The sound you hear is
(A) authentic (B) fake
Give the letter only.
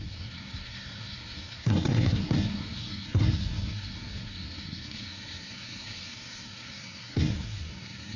B